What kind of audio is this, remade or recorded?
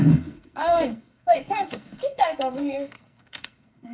remade